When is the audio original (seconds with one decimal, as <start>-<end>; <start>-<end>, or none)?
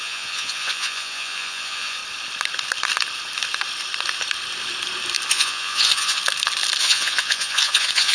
2.0-5.3; 6.2-6.8